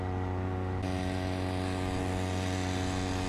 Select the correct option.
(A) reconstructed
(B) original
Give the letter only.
B